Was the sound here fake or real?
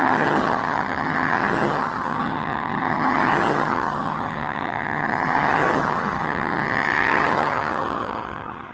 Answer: fake